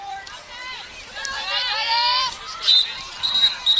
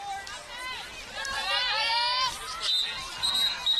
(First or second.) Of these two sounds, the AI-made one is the first